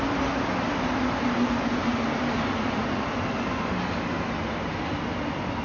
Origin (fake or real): real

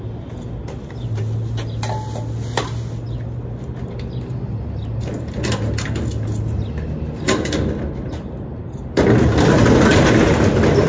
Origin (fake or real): real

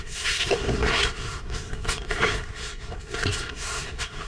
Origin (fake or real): fake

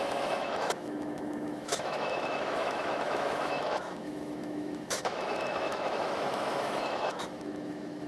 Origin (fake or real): fake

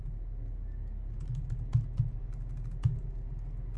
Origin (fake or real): real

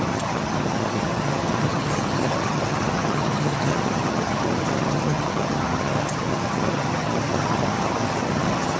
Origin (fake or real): fake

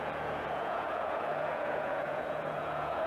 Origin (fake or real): fake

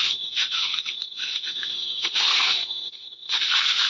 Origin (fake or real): fake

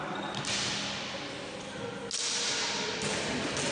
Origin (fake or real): real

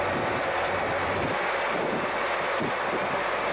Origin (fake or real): real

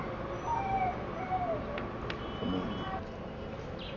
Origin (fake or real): real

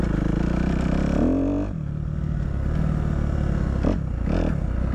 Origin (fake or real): real